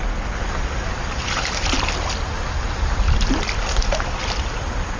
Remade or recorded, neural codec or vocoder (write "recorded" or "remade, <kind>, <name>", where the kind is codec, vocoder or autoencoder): recorded